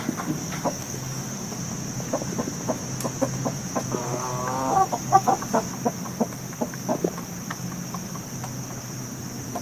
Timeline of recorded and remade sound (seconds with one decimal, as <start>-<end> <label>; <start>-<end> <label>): 0.0-0.4 recorded; 0.4-1.6 remade; 1.6-4.0 recorded; 4.0-5.3 remade; 5.3-9.6 recorded